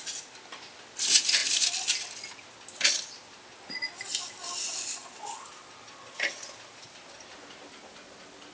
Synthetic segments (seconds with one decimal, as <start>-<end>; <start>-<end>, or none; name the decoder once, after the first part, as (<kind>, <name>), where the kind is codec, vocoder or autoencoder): none